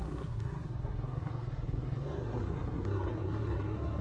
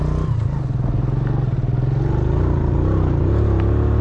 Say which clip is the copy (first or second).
first